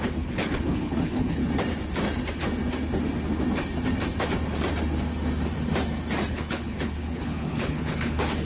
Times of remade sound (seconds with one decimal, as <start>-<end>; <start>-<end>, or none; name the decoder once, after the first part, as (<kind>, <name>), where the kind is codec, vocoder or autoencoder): 0.0-1.4 (codec, HILCodec); 6.3-8.4